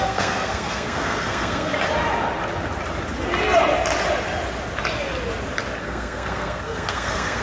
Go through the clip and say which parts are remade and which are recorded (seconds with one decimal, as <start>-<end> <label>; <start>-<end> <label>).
0.0-1.7 remade; 1.7-5.8 recorded; 5.8-7.4 remade